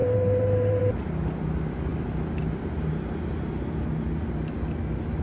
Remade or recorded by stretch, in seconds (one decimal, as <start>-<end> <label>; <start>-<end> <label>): 0.0-0.8 remade; 0.8-5.2 recorded